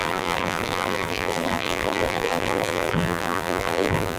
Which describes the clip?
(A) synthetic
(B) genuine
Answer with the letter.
A